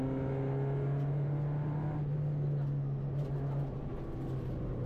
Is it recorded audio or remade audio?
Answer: recorded